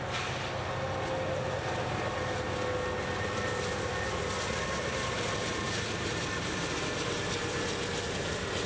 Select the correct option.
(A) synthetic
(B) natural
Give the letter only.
B